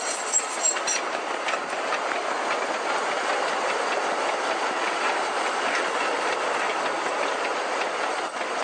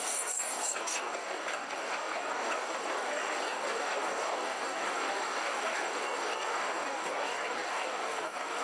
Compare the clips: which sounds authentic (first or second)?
first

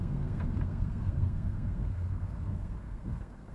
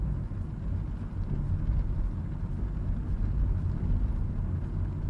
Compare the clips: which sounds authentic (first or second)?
second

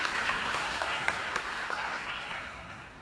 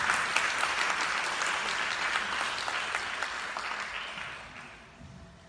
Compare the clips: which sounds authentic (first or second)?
second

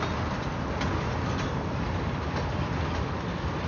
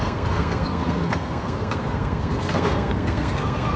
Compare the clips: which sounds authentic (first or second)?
first